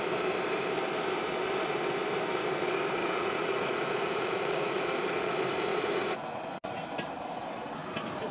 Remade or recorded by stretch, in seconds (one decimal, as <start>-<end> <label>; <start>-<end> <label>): 0.0-3.0 recorded; 3.0-5.3 remade; 5.3-5.7 recorded; 5.7-6.7 remade; 6.7-8.3 recorded